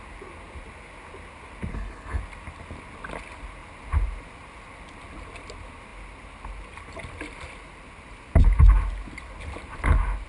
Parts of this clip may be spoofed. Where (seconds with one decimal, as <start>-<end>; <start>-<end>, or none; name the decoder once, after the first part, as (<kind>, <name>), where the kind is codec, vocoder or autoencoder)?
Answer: 1.7-2.2 (codec, HILCodec)